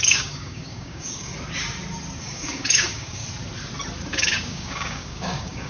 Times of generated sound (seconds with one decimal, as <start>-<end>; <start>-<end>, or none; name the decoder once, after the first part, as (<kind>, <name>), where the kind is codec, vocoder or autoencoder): 0.0-1.3 (codec, DAC); 2.2-3.2; 4.1-5.7